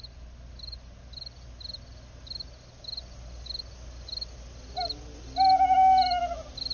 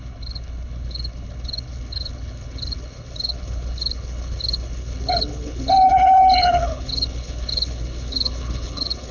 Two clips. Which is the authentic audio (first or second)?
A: first